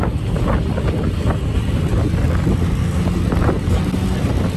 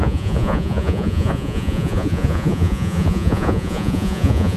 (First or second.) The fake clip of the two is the second